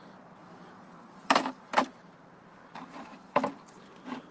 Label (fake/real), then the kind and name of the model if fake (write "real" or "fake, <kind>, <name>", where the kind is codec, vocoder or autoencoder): fake, vocoder, BigVGAN v2